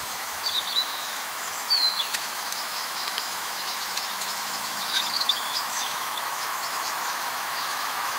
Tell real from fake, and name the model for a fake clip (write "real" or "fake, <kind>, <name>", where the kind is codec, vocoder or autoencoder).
fake, autoencoder, DAC-VAE